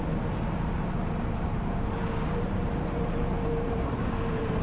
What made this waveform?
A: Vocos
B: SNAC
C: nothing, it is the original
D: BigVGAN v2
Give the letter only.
D